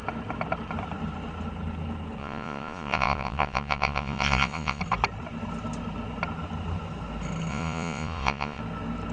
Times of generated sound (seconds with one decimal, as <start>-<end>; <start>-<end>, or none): 2.2-4.8; 7.5-8.6